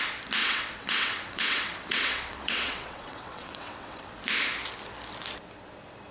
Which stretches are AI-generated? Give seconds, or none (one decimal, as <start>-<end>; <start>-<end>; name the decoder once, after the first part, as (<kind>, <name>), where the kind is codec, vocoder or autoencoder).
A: 0.4-4.1 (vocoder, WaveNeXt)